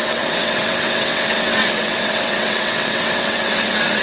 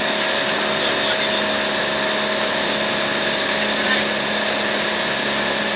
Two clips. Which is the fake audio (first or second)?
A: first